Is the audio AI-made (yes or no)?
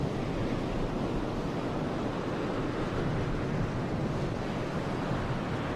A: no